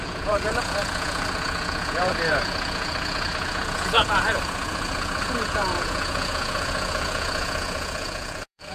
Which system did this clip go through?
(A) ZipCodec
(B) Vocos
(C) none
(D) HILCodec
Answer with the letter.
B